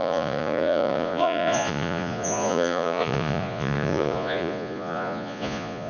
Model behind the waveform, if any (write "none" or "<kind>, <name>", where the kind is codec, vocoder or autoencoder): vocoder, Vocos